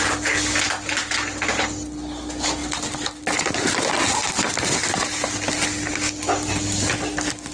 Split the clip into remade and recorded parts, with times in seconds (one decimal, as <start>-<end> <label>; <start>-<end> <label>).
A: 0.0-7.5 recorded